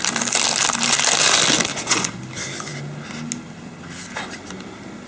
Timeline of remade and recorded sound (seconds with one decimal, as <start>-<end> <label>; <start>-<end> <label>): 0.0-1.7 recorded; 1.7-2.2 remade; 2.2-5.1 recorded